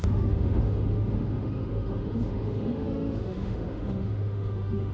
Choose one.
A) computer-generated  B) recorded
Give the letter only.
A